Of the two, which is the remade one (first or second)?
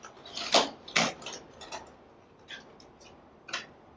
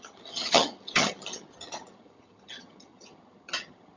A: second